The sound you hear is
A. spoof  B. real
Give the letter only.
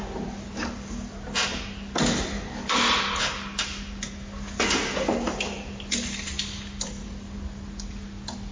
B